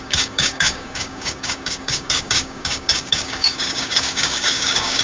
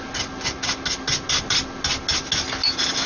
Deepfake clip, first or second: first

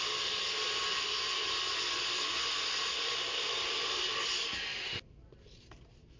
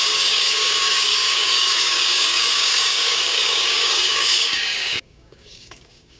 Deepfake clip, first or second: second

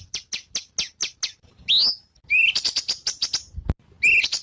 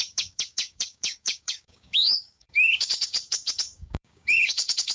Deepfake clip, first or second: second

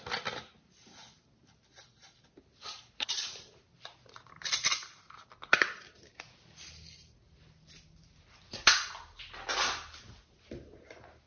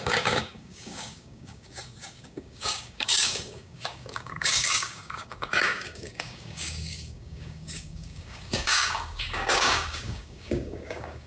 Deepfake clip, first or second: second